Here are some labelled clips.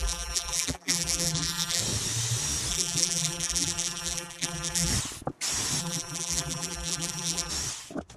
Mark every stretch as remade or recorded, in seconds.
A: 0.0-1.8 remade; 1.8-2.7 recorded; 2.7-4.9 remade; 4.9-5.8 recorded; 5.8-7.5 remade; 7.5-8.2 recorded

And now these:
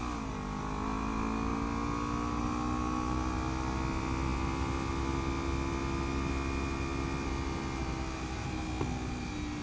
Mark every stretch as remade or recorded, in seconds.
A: 0.0-9.6 recorded

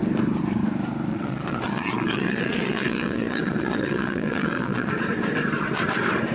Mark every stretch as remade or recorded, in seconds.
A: 0.0-1.1 recorded; 1.1-4.9 remade; 4.9-6.3 recorded